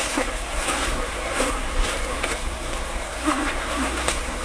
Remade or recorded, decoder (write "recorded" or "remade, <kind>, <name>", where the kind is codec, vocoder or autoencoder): remade, codec, SNAC